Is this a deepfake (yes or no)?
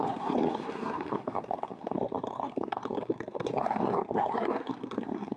yes